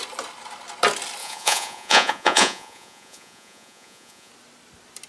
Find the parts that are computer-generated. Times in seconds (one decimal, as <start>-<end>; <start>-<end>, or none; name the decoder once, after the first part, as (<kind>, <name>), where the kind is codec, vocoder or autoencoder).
1.2-4.3 (vocoder, Vocos)